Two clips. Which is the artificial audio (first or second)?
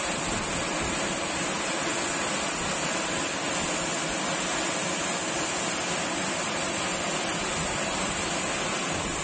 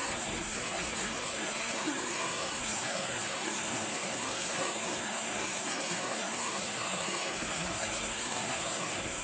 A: second